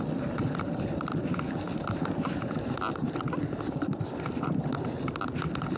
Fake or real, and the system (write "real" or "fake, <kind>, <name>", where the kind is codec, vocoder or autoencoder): fake, vocoder, BigVGAN v2